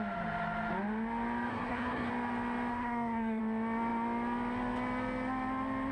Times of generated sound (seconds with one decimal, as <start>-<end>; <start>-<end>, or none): 1.5-2.1; 2.7-3.4